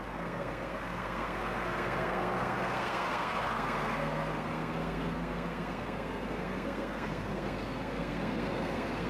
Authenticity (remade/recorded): remade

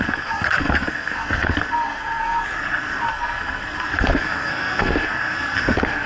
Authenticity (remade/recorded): remade